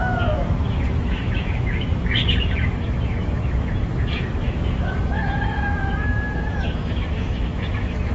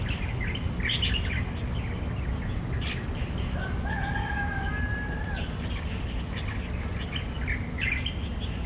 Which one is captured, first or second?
second